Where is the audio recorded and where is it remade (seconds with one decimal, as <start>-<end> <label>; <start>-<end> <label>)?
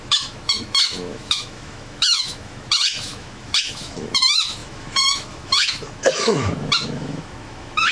0.0-7.9 remade